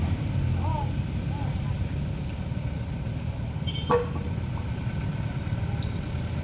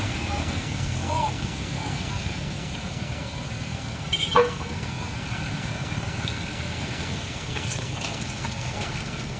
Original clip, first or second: first